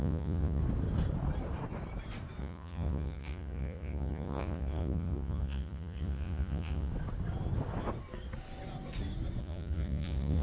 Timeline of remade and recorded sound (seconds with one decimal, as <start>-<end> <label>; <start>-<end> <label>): 0.0-0.6 remade; 0.6-2.4 recorded; 2.4-6.9 remade; 6.9-9.4 recorded; 9.4-10.4 remade